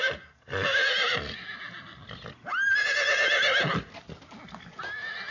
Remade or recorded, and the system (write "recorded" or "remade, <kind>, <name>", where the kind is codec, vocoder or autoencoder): recorded